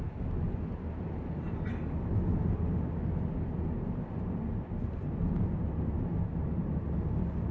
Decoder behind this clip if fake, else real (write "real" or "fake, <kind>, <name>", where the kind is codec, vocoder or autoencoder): real